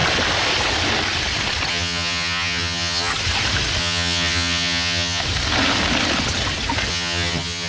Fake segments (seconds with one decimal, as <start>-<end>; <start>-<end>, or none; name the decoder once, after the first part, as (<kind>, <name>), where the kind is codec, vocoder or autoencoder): 1.7-3.1 (vocoder, HiFi-GAN); 3.8-5.2; 6.9-7.7